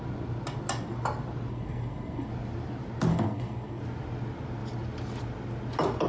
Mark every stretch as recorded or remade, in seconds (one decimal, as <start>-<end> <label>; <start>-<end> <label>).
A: 0.0-1.5 recorded; 1.5-2.3 remade; 2.3-3.1 recorded; 3.1-3.8 remade; 3.8-6.1 recorded